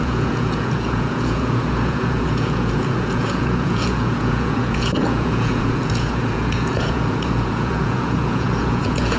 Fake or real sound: fake